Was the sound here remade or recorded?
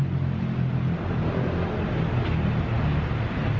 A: recorded